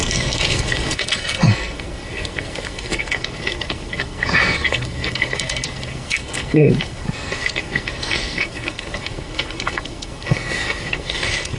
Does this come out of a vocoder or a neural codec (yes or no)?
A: yes